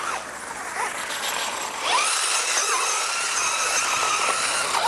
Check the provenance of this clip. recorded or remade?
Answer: recorded